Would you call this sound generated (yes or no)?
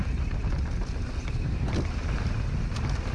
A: no